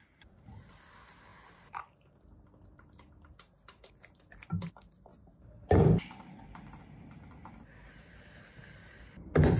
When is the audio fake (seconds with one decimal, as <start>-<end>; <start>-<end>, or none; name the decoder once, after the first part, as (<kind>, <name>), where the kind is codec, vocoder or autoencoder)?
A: 5.1-6.8 (vocoder, BigVGAN v2)